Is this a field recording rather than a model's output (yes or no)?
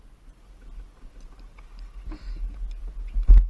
yes